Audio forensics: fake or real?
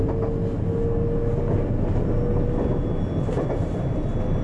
real